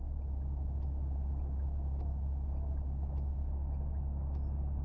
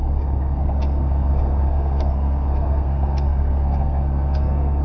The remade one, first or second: second